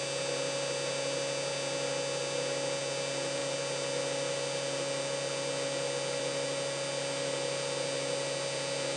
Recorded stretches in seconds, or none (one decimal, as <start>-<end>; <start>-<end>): 0.0-9.0